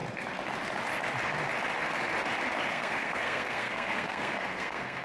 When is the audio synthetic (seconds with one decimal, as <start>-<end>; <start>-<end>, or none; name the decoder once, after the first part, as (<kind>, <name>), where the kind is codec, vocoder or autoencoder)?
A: 2.7-5.0 (codec, SNAC)